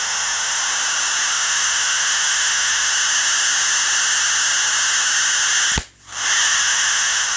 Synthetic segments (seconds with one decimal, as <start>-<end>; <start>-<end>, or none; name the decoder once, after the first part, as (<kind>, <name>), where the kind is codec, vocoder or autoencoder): 0.0-0.6 (autoencoder, DAC-VAE); 1.3-2.9; 6.4-7.4